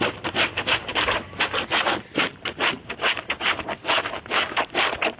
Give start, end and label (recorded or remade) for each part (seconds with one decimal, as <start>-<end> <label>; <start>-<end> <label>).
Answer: 0.0-5.2 remade